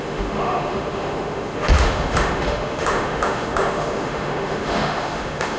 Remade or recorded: remade